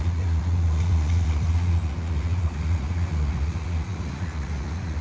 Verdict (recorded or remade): remade